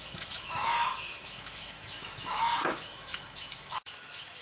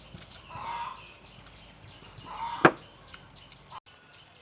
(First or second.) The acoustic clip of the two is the second